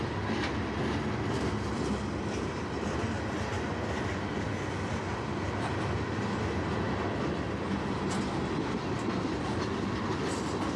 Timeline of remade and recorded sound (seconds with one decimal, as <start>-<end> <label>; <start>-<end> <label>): 0.0-10.8 recorded